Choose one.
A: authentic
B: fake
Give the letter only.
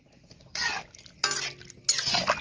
A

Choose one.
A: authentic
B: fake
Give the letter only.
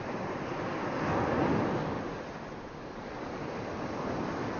A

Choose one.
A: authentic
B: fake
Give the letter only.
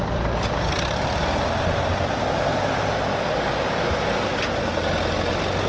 A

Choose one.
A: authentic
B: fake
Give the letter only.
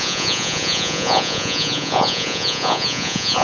B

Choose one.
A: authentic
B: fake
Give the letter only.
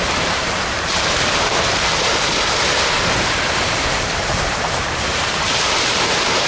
B